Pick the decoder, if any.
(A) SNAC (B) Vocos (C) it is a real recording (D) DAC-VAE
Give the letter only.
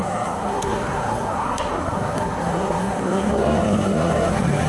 A